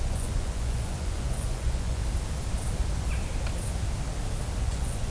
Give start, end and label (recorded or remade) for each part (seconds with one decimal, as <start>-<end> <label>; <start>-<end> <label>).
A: 0.0-2.0 remade; 2.0-4.6 recorded; 4.6-5.1 remade